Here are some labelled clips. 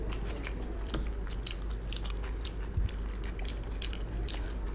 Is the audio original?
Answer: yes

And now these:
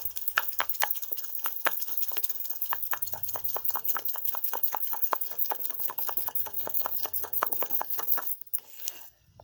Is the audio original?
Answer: no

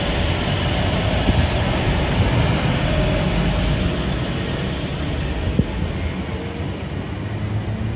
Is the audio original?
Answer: yes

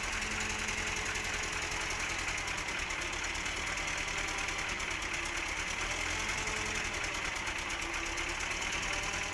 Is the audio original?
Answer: yes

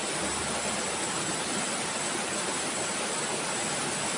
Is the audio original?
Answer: yes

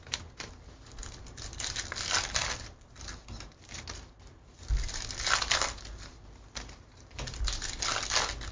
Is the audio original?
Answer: yes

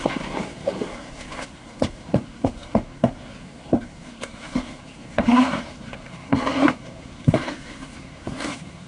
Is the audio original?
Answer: no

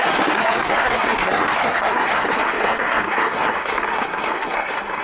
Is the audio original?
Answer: no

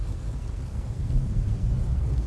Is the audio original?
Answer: no